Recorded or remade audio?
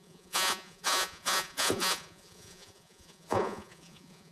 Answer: remade